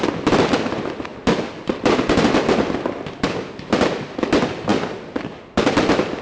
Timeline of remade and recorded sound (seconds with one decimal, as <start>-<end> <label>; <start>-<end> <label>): 0.0-6.2 recorded